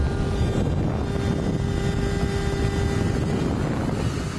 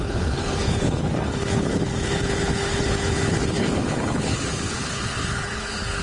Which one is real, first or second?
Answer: first